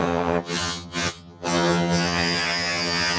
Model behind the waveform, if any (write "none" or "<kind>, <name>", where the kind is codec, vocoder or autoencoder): vocoder, HiFi-GAN